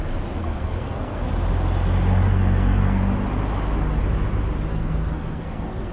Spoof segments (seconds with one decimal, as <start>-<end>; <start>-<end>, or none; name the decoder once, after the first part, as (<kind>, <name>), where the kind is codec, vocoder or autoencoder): 0.4-1.3 (codec, SNAC); 2.3-3.0; 4.7-5.9